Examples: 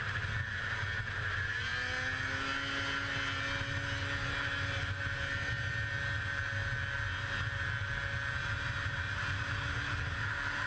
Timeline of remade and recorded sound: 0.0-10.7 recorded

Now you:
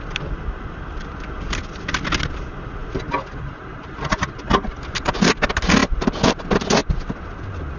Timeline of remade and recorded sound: 0.0-7.8 recorded

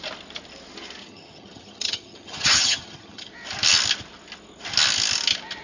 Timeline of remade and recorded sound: 0.0-1.0 recorded; 1.0-3.3 remade; 3.3-5.6 recorded